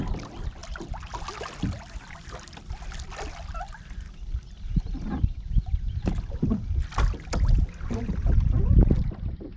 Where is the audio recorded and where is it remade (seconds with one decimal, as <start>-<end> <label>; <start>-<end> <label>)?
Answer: 0.0-9.6 recorded